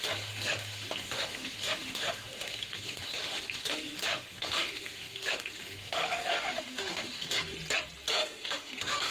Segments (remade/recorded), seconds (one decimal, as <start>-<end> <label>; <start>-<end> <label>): 0.0-7.5 remade; 7.5-8.1 recorded; 8.1-9.1 remade